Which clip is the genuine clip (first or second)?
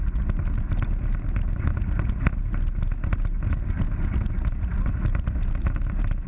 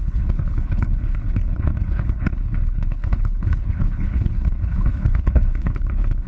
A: first